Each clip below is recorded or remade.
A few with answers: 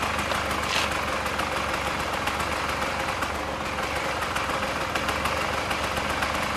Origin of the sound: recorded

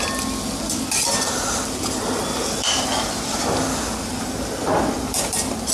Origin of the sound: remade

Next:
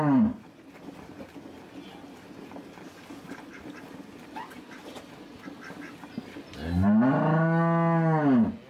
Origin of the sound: recorded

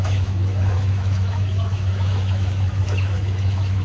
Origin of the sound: remade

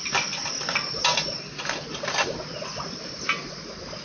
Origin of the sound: recorded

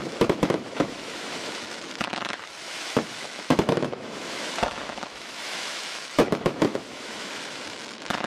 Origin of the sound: remade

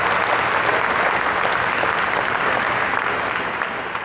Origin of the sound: recorded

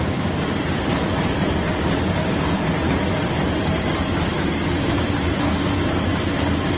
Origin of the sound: recorded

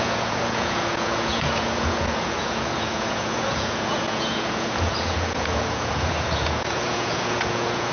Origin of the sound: remade